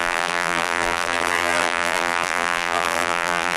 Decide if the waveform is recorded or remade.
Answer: remade